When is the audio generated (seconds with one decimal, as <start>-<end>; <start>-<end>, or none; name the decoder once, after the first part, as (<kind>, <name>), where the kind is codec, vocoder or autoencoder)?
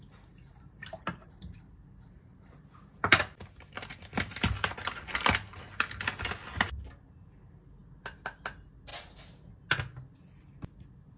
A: 0.5-3.2 (vocoder, BigVGAN v2)